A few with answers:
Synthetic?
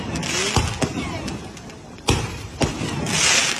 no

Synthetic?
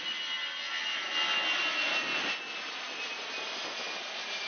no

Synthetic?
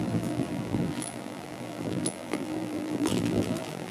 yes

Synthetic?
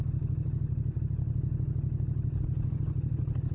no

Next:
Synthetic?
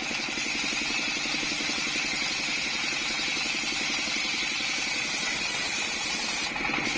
no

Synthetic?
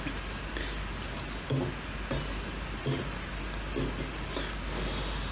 no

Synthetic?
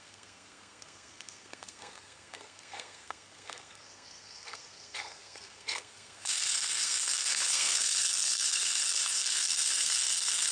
yes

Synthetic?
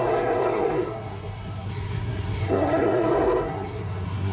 yes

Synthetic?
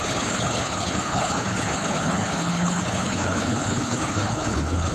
yes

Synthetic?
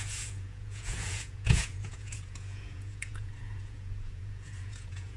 yes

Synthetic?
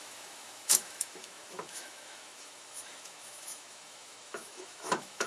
yes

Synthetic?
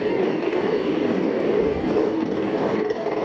yes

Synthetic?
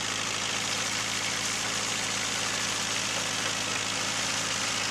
no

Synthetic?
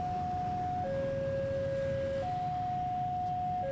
no